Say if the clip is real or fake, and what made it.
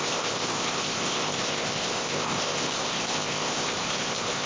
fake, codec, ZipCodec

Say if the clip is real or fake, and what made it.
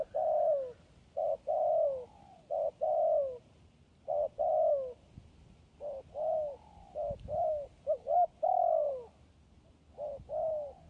real